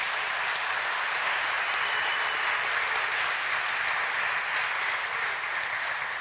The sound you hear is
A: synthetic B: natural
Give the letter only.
B